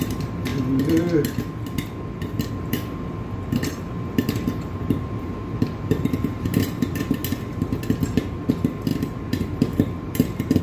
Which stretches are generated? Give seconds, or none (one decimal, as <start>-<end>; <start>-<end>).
0.0-0.5; 2.5-7.2; 8.5-10.6